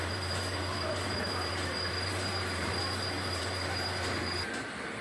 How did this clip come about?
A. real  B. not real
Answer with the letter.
B